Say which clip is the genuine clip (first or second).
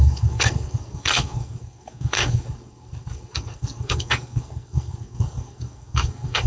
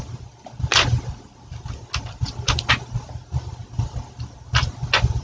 second